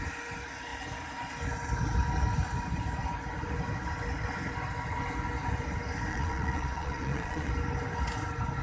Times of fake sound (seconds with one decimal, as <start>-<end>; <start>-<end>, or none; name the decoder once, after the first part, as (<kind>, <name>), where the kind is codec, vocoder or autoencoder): 6.1-7.5 (vocoder, Vocos)